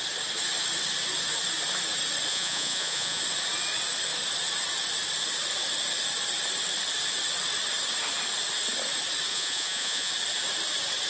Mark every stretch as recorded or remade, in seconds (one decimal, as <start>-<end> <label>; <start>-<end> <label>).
0.0-2.3 recorded; 2.3-3.2 remade; 3.2-9.3 recorded; 9.3-10.1 remade; 10.1-11.1 recorded